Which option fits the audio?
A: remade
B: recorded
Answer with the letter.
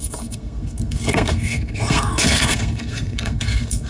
A